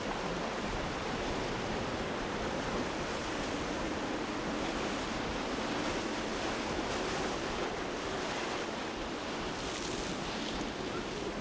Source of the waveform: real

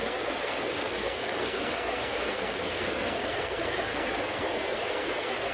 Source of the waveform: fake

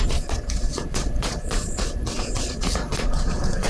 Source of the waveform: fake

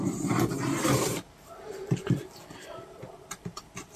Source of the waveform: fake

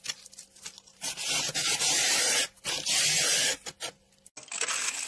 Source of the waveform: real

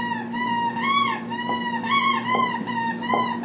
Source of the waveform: real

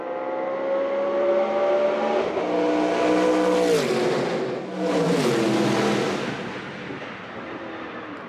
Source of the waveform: real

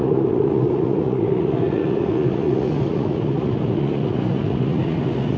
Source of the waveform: fake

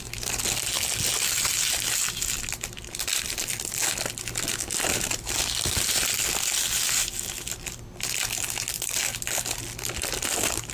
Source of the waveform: real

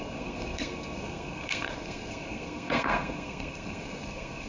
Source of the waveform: fake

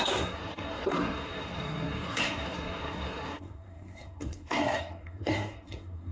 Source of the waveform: fake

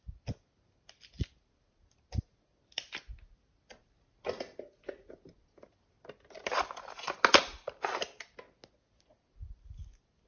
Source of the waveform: real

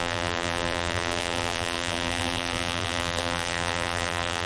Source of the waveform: fake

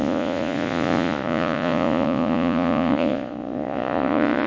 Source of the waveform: fake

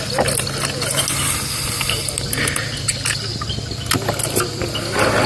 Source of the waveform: real